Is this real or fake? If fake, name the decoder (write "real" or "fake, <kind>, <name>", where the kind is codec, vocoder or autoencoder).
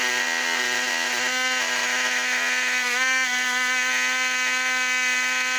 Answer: real